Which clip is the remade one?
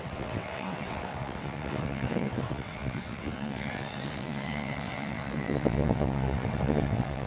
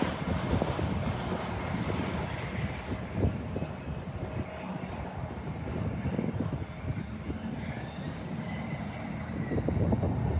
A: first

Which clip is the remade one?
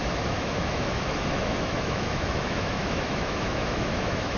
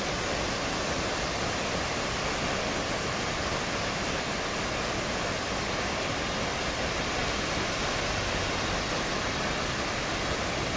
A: first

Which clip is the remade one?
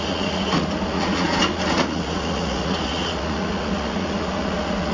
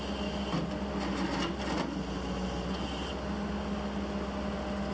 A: first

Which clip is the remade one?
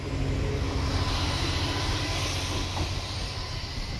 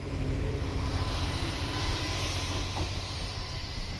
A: second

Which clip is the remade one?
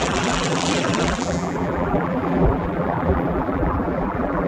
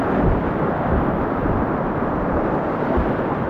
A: first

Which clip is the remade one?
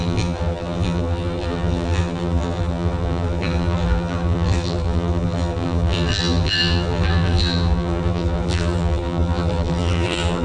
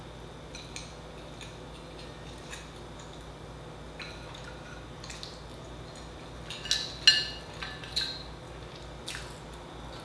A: first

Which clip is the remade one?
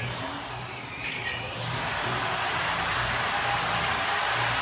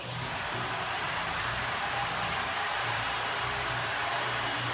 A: second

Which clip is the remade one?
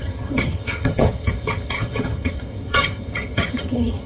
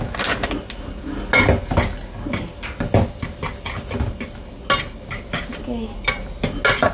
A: first